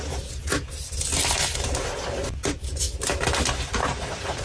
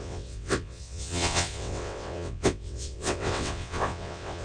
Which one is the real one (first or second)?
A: first